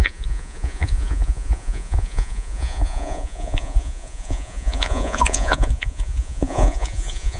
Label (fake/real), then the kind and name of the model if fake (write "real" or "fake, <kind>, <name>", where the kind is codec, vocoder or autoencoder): fake, vocoder, Vocos